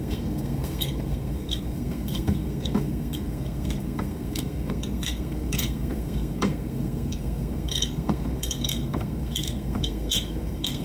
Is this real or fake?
fake